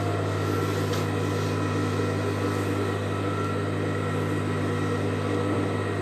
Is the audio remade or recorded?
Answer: recorded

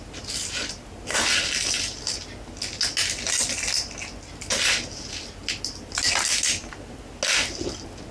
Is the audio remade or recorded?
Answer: recorded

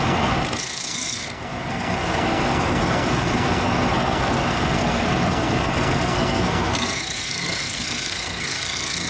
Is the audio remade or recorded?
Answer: remade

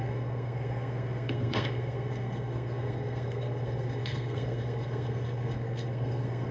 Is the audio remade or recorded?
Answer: remade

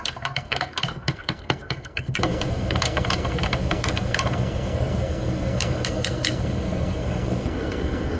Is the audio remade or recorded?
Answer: remade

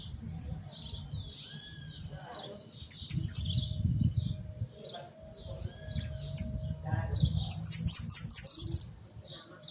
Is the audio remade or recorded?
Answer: recorded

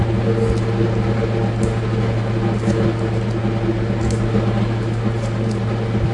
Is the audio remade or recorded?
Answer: recorded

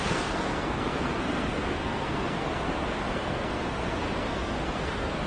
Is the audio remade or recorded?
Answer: remade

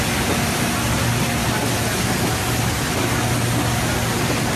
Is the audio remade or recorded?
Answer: recorded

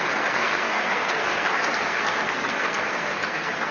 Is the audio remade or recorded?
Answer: remade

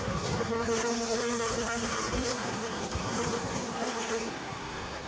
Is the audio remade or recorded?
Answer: remade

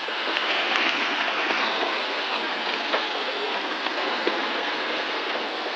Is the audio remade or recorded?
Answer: remade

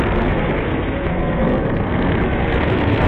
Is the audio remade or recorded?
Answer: remade